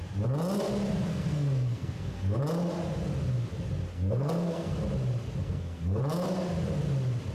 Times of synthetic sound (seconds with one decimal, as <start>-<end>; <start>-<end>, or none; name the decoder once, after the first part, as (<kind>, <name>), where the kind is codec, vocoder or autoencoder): 1.1-2.4 (codec, SNAC); 3.9-4.8; 5.4-6.0